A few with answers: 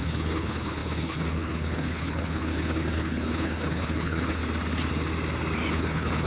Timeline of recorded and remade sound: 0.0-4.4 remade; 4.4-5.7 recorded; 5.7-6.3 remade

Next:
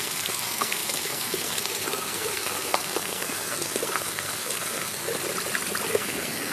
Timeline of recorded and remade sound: 0.0-5.1 remade; 5.1-5.9 recorded; 5.9-6.5 remade

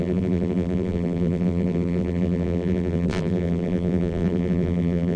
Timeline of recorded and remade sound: 0.0-5.2 remade

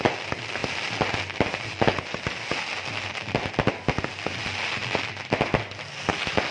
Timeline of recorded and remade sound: 0.0-6.5 recorded

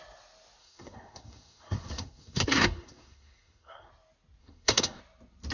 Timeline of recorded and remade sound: 0.0-0.6 recorded; 0.6-3.9 remade; 3.9-4.4 recorded; 4.4-5.0 remade; 5.0-5.5 recorded

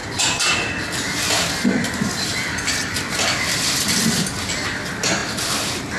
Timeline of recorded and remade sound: 0.0-6.0 recorded

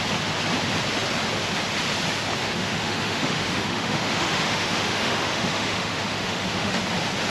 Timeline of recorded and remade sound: 0.0-2.4 recorded; 2.4-6.8 remade; 6.8-7.3 recorded

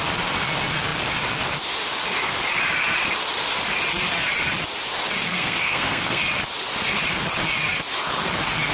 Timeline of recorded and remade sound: 0.0-5.3 recorded; 5.3-6.2 remade; 6.2-8.7 recorded